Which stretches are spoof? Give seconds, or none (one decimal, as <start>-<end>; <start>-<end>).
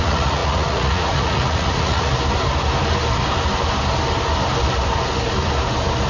0.0-2.1